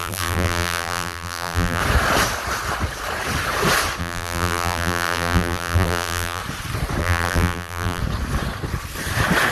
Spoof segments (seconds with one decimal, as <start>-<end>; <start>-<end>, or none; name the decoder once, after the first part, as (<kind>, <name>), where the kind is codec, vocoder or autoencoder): 0.0-1.8 (vocoder, BigVGAN v2); 4.0-6.4; 7.0-8.0